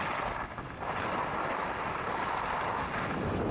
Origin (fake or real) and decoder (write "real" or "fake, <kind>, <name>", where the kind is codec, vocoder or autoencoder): real